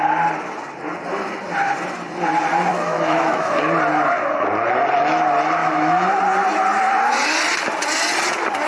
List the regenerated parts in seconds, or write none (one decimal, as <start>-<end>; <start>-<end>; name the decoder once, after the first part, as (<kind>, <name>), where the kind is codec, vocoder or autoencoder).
2.7-3.6 (autoencoder, DAC-VAE); 5.6-6.2

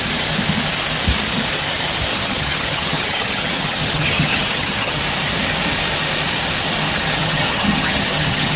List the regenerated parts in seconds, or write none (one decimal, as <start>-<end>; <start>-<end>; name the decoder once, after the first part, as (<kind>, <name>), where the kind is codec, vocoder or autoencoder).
2.1-5.0 (vocoder, HiFi-GAN); 7.2-8.6

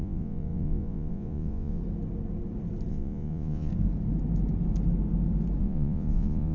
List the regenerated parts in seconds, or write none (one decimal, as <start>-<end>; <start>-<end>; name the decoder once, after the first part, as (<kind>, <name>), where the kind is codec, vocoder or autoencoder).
0.0-1.8 (vocoder, Vocos); 2.9-3.7; 5.6-6.5

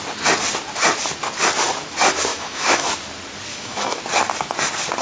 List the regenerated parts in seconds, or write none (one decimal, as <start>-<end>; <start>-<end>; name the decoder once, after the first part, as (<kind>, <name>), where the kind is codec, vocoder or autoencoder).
2.3-2.9 (autoencoder, DAC-VAE); 3.5-4.0

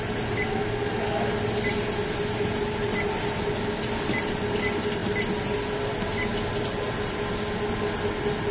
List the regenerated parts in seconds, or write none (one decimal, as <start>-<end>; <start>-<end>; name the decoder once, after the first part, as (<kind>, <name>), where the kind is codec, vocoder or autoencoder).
0.5-1.3 (codec, DAC)

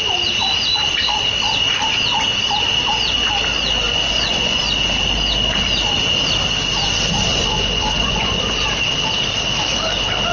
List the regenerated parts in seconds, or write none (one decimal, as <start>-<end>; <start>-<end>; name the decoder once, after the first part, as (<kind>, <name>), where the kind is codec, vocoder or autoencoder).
3.7-4.6 (vocoder, Vocos); 7.3-8.7

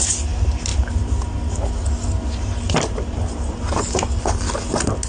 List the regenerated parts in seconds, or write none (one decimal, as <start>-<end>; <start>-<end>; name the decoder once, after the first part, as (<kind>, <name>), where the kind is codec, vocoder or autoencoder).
none